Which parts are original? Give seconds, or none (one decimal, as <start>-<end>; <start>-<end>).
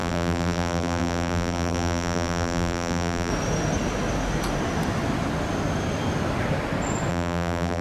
3.3-7.1